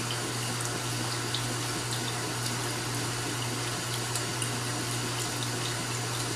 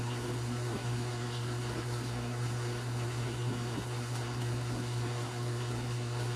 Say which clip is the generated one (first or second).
second